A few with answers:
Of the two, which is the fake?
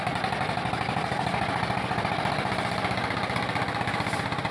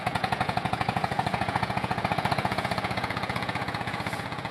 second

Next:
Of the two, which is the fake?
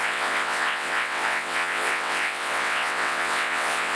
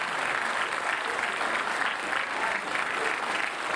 first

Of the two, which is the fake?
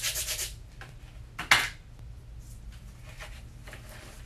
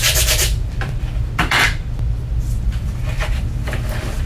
second